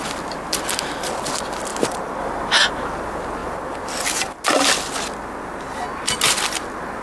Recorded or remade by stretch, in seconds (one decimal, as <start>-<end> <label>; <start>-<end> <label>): 0.0-7.0 recorded